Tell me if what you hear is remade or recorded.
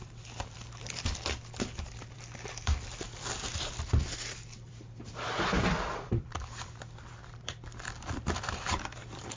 remade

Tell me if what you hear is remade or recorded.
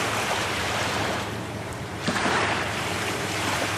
remade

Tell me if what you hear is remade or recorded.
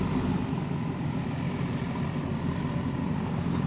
remade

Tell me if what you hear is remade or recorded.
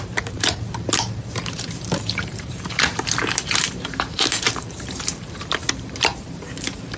remade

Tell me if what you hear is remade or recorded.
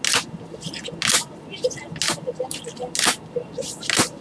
recorded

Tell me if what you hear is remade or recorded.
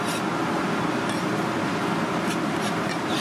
recorded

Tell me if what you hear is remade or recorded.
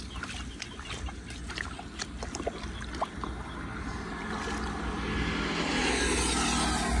recorded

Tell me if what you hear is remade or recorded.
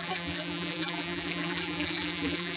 remade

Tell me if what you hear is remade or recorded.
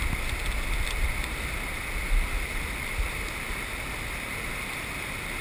recorded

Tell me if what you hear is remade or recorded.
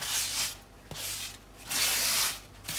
recorded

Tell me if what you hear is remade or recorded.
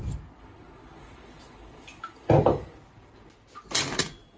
recorded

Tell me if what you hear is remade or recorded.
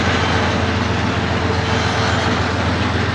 recorded